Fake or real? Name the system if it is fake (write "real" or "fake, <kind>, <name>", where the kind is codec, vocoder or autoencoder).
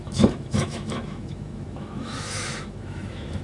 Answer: fake, autoencoder, DAC-VAE